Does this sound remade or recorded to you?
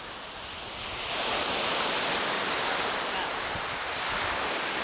recorded